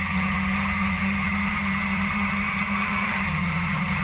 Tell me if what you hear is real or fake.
fake